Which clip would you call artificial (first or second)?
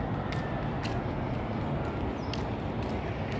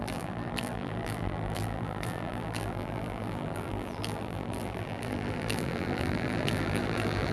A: second